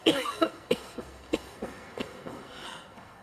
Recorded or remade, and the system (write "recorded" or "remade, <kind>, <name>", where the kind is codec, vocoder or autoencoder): remade, codec, SNAC